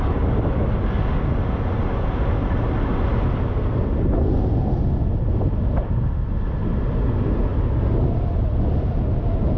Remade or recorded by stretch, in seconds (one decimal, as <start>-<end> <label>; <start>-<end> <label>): 0.0-9.6 recorded